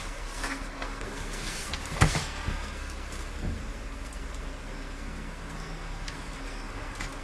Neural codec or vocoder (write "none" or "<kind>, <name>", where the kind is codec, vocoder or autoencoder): codec, SNAC